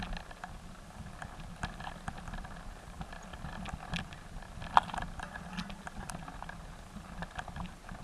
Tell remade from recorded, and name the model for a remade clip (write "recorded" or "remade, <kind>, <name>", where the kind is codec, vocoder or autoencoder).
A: recorded